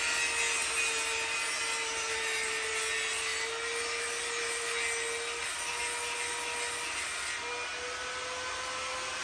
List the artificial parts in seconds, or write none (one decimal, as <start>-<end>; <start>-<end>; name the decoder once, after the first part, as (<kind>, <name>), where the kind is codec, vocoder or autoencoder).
none